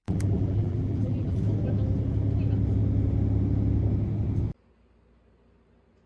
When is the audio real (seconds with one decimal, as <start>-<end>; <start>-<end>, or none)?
1.4-6.1

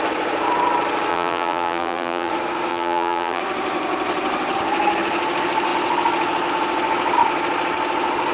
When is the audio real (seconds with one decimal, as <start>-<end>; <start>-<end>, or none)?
0.0-1.1; 2.3-2.7; 3.4-8.3

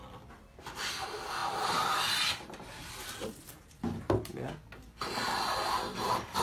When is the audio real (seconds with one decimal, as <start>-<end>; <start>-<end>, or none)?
4.3-5.7

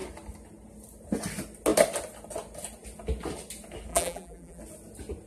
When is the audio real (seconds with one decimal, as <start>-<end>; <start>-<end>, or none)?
0.0-3.9; 4.6-5.3

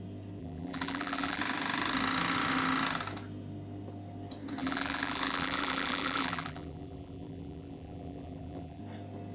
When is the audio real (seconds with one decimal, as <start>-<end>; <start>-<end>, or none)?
0.0-0.4; 1.4-4.6; 8.8-9.3

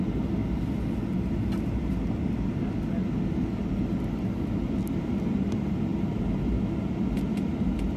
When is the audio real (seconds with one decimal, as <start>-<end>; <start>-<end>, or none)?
0.0-8.0